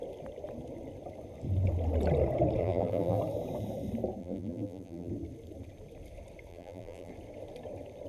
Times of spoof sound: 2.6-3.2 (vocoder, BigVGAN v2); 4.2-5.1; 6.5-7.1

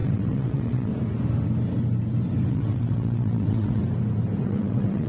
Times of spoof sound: 0.0-0.9 (vocoder, WaveNeXt); 2.5-3.8; 4.4-5.1

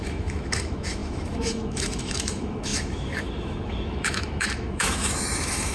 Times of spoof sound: 0.0-5.7 (autoencoder, DAC-VAE)